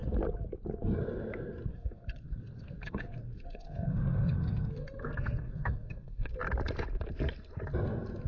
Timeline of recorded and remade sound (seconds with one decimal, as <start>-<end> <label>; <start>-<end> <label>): 0.0-1.7 recorded; 1.7-6.3 remade; 6.3-8.3 recorded